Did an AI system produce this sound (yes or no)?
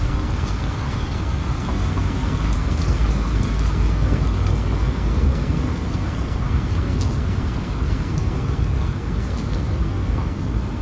yes